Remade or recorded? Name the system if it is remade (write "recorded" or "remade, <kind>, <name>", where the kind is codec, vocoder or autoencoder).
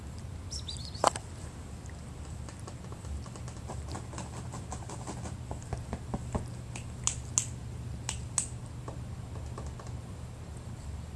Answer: recorded